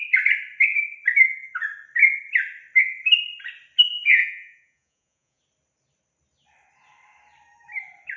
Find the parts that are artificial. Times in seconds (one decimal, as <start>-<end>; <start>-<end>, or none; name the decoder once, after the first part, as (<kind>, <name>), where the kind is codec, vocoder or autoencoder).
3.9-5.4 (vocoder, Vocos)